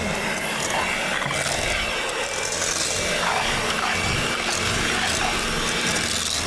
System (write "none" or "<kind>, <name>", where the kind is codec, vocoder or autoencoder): none